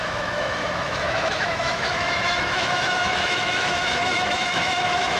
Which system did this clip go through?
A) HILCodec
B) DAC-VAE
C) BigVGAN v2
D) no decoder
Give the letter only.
B